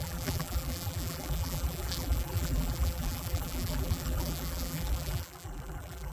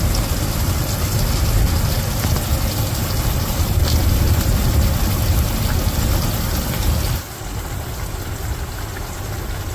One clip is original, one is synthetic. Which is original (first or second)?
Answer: second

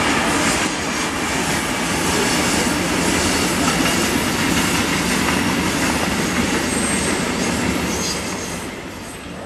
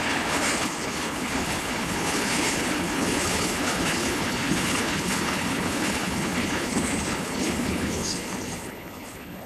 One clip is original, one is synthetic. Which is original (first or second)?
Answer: first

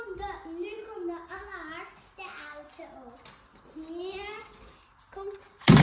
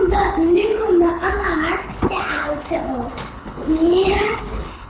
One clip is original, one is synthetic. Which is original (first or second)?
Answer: first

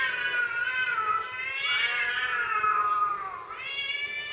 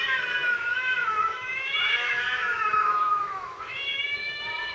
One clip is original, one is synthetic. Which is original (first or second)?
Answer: first